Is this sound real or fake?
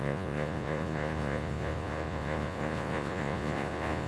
fake